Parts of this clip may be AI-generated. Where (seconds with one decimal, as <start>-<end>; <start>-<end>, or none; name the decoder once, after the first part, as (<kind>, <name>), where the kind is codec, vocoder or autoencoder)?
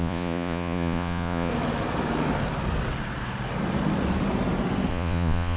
0.0-1.5 (vocoder, Vocos); 4.9-5.6